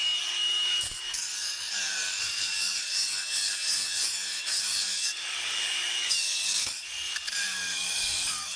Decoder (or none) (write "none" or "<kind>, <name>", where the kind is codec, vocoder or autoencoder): codec, DAC